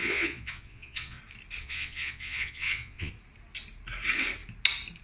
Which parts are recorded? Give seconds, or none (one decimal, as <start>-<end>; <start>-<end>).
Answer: 1.2-1.6; 3.1-5.0